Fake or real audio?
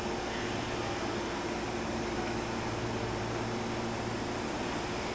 real